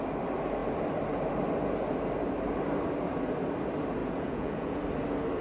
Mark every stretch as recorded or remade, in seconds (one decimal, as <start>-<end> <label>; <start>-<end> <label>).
0.0-4.0 recorded; 4.0-4.8 remade; 4.8-5.4 recorded